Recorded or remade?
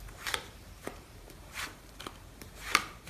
remade